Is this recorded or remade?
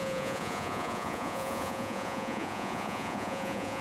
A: remade